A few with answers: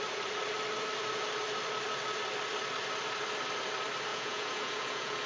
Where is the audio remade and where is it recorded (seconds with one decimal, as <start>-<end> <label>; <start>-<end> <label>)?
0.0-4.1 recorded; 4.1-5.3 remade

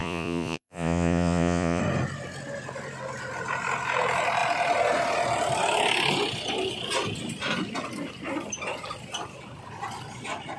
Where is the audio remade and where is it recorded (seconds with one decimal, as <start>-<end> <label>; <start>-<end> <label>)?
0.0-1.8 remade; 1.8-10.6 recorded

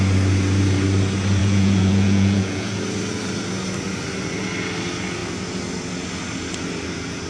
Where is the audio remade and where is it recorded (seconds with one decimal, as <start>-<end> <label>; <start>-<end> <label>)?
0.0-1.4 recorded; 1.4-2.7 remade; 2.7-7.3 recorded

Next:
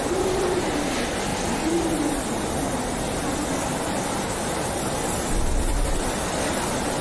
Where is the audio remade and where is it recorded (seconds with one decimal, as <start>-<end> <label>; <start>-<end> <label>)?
0.0-7.0 recorded

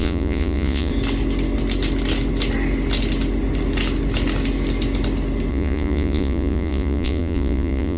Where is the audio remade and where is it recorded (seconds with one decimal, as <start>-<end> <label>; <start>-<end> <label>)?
0.0-0.9 remade; 0.9-5.5 recorded; 5.5-8.0 remade